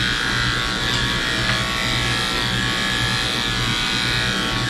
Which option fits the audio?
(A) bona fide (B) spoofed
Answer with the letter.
A